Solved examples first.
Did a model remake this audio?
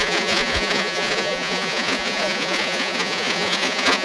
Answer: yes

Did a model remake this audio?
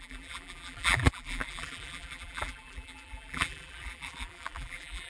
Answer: yes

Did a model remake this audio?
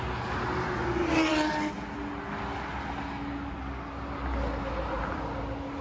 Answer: no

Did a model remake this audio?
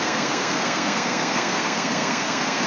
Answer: yes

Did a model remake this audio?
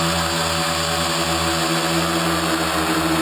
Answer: no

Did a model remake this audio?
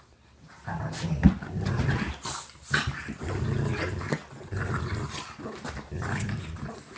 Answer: no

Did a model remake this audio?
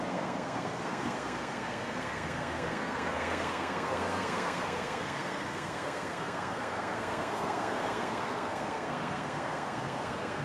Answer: yes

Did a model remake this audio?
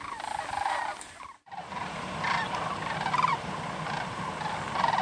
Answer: no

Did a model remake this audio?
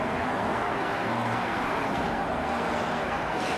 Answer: yes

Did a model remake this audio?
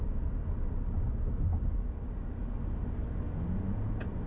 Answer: no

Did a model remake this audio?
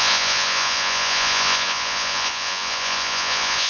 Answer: yes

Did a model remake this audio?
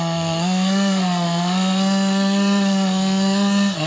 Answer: yes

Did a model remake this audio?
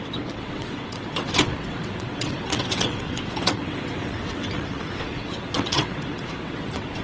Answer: yes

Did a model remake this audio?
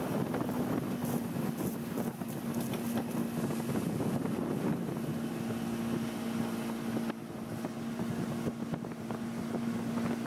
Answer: no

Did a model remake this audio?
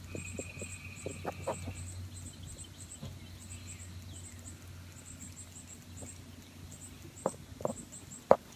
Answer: no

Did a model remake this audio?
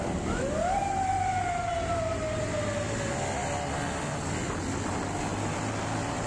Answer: no